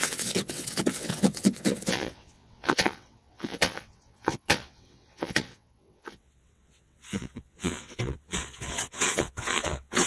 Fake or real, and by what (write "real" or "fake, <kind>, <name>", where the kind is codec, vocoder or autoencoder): fake, vocoder, WaveNeXt